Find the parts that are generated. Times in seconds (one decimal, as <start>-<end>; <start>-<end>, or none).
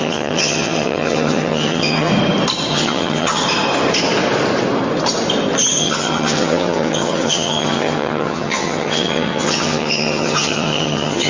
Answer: 0.0-2.1; 2.7-3.4; 5.8-11.3